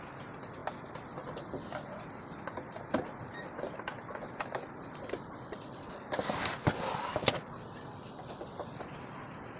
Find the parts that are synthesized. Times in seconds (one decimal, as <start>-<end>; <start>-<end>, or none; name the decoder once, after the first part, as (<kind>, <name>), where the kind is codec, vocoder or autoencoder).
none